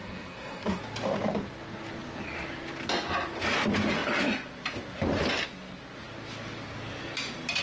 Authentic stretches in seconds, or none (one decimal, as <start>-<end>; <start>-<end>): 0.8-7.6